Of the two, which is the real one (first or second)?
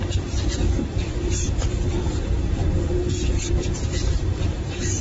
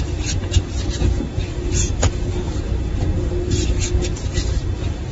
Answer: second